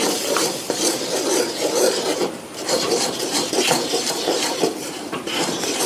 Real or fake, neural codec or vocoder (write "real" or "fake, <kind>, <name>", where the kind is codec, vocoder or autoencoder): fake, vocoder, BigVGAN v2